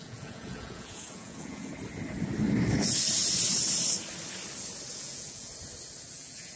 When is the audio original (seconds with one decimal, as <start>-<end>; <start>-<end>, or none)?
1.7-4.9; 5.5-6.1